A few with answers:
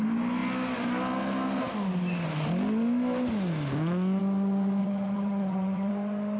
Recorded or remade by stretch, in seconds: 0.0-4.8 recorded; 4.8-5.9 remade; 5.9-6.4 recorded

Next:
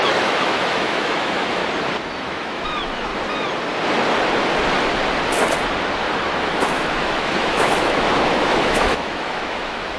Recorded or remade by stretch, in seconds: 0.0-1.6 remade; 1.6-2.2 recorded; 2.2-3.1 remade; 3.1-6.4 recorded; 6.4-10.0 remade

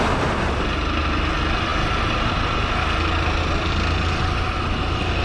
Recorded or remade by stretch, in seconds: 0.0-5.2 recorded

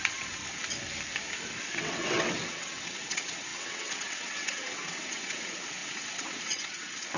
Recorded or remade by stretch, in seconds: 0.0-0.4 remade; 0.4-1.6 recorded; 1.6-7.2 remade

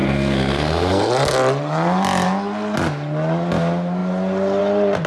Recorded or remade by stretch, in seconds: 0.0-1.1 remade; 1.1-5.1 recorded